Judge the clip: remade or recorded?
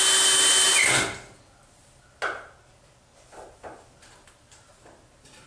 recorded